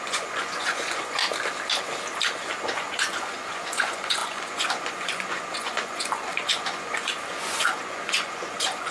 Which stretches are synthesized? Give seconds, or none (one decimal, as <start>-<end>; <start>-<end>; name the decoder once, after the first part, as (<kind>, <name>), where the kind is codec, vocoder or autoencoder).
0.0-1.2 (vocoder, Vocos); 2.8-8.9